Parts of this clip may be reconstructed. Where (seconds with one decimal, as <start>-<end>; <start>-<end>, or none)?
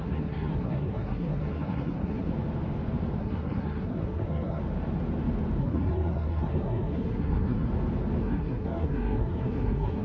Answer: 0.0-2.3; 3.2-4.6; 5.6-7.7; 8.2-10.0